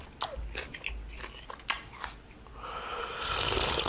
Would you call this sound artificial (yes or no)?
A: no